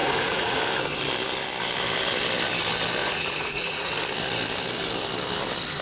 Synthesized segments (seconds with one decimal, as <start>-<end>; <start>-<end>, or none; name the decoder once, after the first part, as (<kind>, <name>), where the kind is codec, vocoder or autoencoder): 0.0-0.6 (vocoder, Vocos); 3.0-3.9